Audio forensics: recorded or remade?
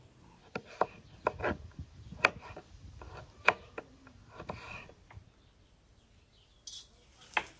recorded